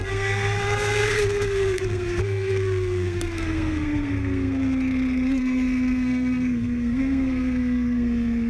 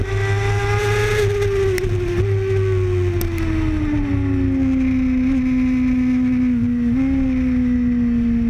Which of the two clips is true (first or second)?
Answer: second